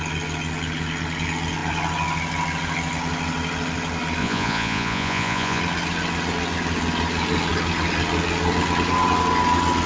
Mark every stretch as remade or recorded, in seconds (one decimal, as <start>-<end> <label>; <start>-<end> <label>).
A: 0.0-4.2 recorded; 4.2-5.6 remade; 5.6-9.9 recorded